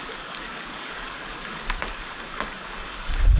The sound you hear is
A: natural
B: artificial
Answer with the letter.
B